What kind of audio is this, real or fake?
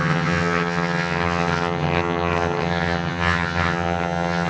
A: fake